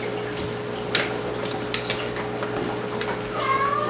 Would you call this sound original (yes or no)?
yes